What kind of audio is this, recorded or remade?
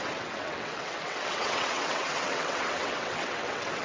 remade